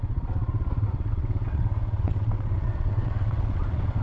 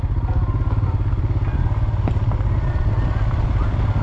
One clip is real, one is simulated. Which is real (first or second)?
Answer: second